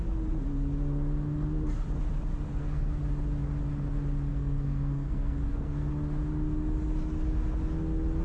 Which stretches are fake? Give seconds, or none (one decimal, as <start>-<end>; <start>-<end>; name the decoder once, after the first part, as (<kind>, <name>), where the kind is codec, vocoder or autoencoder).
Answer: 2.5-3.0 (codec, SNAC); 4.3-5.9